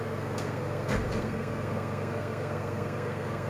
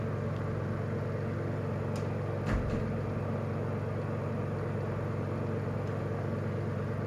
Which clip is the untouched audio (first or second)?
second